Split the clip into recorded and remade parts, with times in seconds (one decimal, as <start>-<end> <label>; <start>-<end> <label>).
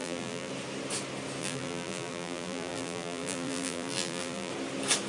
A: 0.0-0.5 remade; 0.5-1.4 recorded; 1.4-4.5 remade; 4.5-5.1 recorded